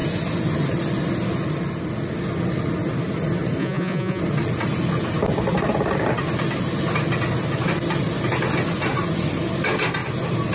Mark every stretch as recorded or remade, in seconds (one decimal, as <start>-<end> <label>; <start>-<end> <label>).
0.0-3.6 recorded; 3.6-4.2 remade; 4.2-10.5 recorded